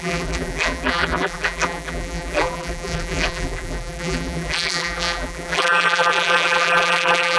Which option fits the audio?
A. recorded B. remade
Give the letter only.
B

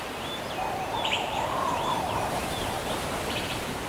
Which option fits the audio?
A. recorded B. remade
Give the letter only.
B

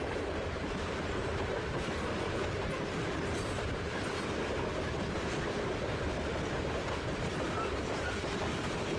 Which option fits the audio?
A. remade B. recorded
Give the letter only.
A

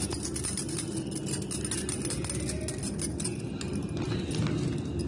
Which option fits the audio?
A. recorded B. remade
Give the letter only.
A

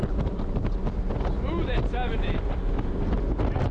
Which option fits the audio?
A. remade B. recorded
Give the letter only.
B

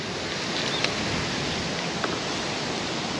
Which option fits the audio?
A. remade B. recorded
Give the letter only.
B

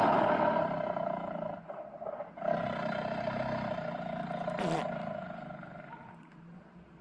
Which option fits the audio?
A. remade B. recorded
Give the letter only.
A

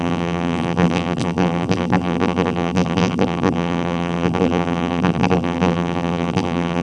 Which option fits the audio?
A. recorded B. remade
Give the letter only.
B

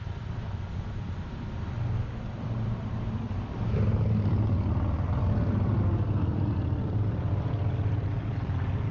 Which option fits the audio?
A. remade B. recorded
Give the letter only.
A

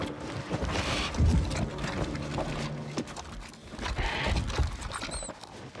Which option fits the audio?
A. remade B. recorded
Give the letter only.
B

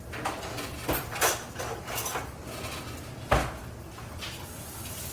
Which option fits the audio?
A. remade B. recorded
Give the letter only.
B